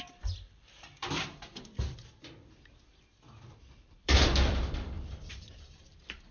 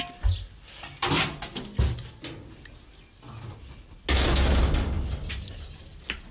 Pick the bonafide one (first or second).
second